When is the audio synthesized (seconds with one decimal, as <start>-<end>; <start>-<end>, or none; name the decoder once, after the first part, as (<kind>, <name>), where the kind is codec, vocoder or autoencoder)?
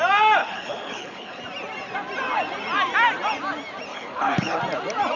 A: 0.4-1.4 (codec, HILCodec); 3.9-4.6